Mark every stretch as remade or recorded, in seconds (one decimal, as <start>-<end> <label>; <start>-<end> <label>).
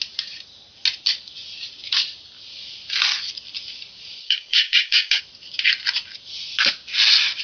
0.0-4.2 recorded; 4.2-5.2 remade; 5.2-7.4 recorded